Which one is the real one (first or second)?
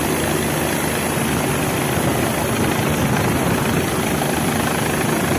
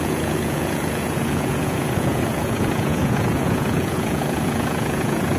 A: first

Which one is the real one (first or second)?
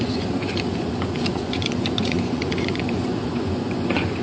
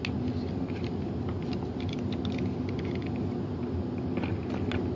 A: second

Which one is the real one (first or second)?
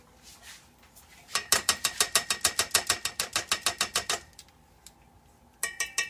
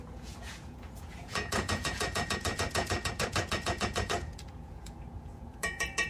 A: first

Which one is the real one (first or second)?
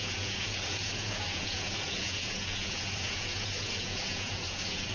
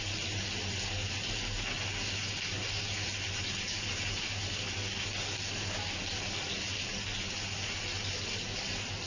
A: second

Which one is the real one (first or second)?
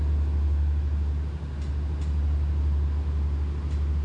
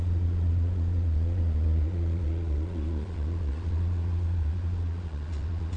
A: first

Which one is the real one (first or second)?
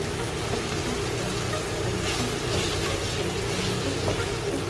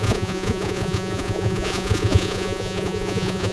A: first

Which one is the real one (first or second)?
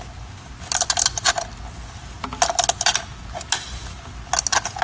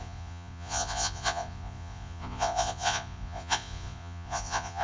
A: first